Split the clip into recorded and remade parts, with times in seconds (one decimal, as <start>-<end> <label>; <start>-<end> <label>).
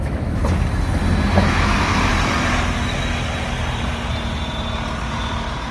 0.0-0.4 remade; 0.4-1.4 recorded; 1.4-2.1 remade; 2.1-5.7 recorded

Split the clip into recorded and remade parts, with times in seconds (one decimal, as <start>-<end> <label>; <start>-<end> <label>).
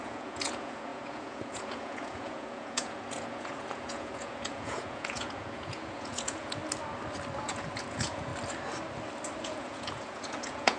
0.0-6.6 remade; 6.6-7.5 recorded; 7.5-8.3 remade; 8.3-9.4 recorded; 9.4-10.8 remade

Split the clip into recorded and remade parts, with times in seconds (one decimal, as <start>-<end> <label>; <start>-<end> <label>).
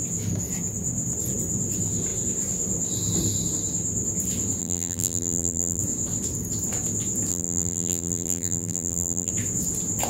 0.0-4.6 recorded; 4.6-5.8 remade; 5.8-7.3 recorded; 7.3-9.3 remade; 9.3-10.1 recorded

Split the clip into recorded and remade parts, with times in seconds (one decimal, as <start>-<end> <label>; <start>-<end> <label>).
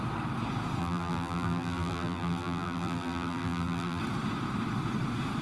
0.0-0.8 recorded; 0.8-4.0 remade; 4.0-5.4 recorded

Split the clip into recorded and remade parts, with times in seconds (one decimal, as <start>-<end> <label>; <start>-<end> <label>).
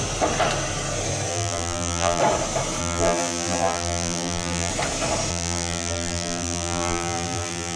0.0-1.3 recorded; 1.3-2.2 remade; 2.2-2.8 recorded; 2.8-4.7 remade; 4.7-5.3 recorded; 5.3-7.8 remade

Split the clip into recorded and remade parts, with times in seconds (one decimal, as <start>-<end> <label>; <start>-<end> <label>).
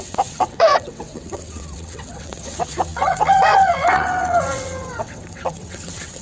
0.0-6.2 remade